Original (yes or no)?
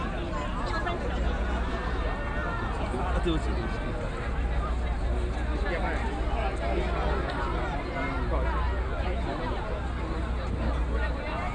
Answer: yes